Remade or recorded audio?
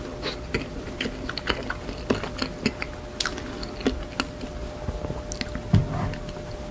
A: recorded